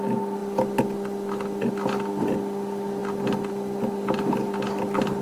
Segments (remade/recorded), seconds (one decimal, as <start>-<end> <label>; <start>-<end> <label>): 0.0-5.2 recorded